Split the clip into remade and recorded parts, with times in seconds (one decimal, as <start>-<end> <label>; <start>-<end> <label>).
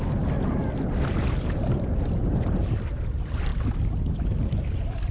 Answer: 0.0-5.1 recorded